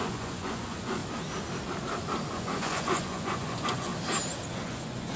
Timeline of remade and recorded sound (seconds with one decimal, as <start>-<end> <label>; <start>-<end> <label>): 0.0-1.0 remade; 1.0-2.3 recorded; 2.3-3.9 remade; 3.9-4.5 recorded; 4.5-5.2 remade